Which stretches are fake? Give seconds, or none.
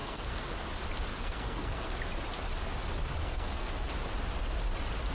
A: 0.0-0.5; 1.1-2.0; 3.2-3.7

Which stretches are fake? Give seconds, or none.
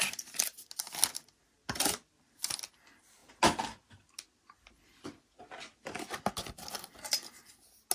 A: none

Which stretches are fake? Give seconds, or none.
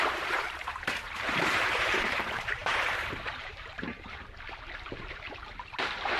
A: 0.0-6.2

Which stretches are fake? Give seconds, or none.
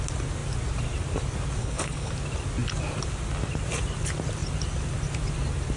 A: 1.6-2.1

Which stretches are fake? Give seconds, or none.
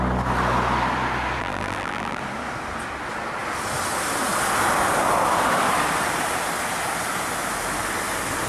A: 1.4-2.2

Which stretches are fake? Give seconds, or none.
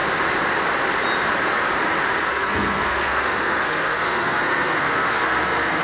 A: 2.3-5.8